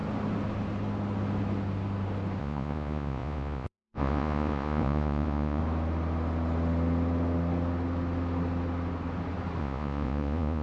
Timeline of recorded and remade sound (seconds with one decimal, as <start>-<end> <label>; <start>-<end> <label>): 0.0-2.4 recorded; 2.4-5.6 remade; 5.6-9.6 recorded; 9.6-10.6 remade